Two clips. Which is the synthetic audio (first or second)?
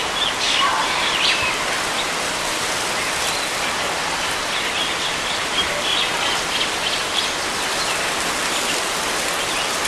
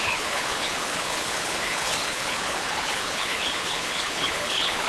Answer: second